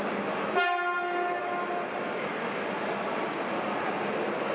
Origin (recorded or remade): recorded